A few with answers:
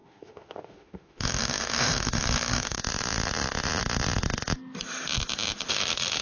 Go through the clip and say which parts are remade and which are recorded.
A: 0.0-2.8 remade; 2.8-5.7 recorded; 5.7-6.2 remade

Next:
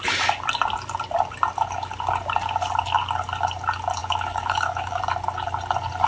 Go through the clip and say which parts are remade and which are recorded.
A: 0.0-4.0 recorded; 4.0-5.0 remade; 5.0-6.1 recorded

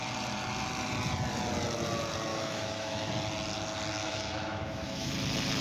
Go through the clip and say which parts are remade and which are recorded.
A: 0.0-2.3 recorded; 2.3-3.1 remade; 3.1-4.0 recorded; 4.0-5.1 remade; 5.1-5.6 recorded

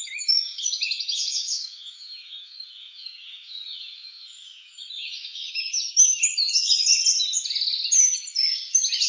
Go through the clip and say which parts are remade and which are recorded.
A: 0.0-6.9 remade; 6.9-9.1 recorded